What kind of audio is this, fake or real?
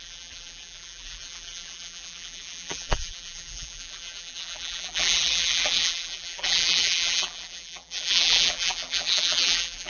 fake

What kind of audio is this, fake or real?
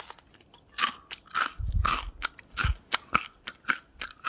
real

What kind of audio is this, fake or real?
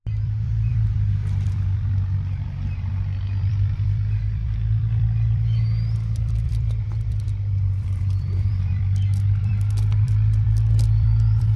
fake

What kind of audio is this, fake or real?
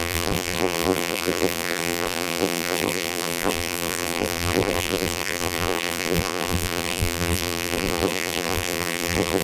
fake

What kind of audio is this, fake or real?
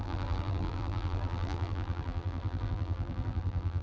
fake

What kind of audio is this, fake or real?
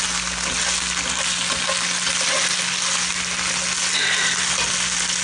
real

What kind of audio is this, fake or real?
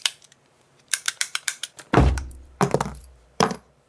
fake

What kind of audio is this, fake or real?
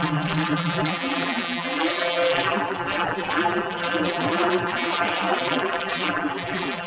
fake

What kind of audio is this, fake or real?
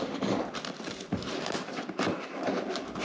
fake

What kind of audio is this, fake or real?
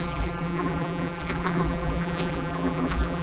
fake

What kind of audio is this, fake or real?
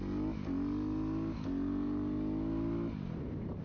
real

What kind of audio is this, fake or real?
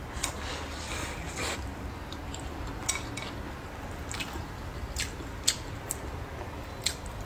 real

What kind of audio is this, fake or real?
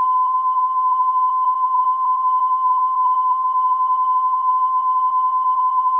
fake